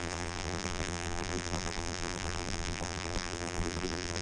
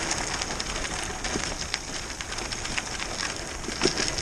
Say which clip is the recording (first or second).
second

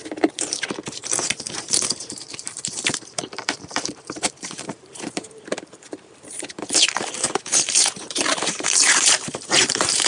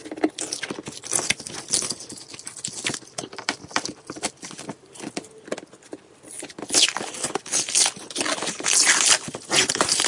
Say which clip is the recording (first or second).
second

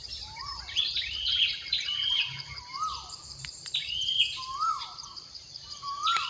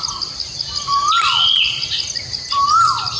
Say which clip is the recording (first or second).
second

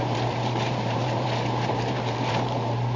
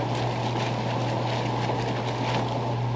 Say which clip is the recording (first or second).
second